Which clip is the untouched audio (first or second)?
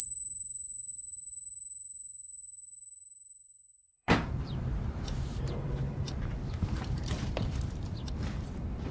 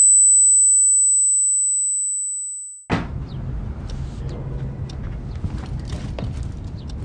second